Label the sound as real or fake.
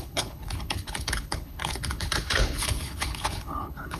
fake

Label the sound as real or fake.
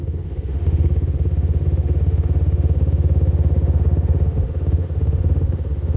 fake